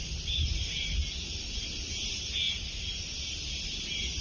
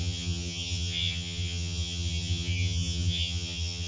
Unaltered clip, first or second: first